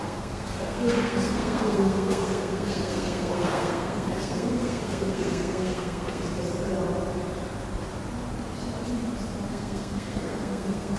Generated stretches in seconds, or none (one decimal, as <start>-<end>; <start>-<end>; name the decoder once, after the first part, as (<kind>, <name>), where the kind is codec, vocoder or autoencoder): 0.0-6.2 (codec, SNAC); 9.5-11.0